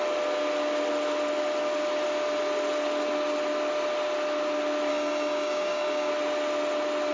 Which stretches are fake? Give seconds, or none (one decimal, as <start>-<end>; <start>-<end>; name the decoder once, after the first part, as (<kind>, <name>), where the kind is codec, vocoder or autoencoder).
4.9-6.1 (codec, DAC)